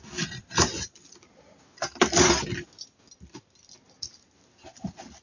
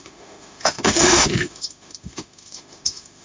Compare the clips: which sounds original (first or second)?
first